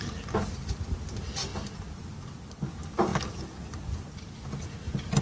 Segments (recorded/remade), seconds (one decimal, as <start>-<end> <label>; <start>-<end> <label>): 0.0-5.2 recorded